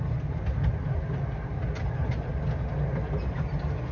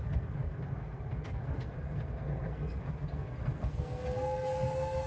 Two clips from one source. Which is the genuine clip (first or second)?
first